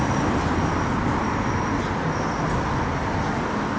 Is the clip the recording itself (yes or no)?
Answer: yes